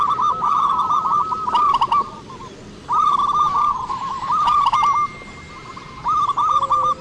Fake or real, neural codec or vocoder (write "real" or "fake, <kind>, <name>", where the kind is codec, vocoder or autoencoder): real